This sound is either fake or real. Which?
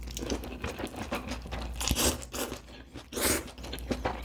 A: real